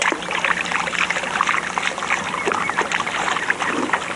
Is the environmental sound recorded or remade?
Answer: recorded